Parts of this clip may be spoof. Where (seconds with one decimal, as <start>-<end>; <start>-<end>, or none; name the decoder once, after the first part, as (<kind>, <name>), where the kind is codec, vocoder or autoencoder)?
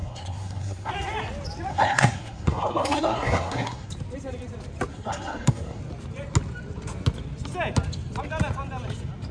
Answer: 0.0-0.9 (codec, SNAC); 1.7-3.9; 4.9-5.8